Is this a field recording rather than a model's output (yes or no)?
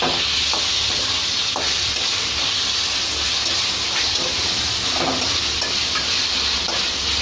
yes